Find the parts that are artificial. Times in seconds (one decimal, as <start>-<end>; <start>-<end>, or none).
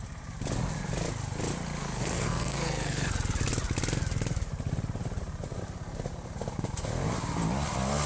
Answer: 1.8-3.1